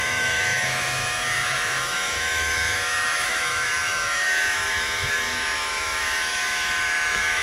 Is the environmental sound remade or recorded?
remade